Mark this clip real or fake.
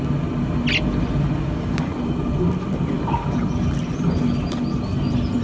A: real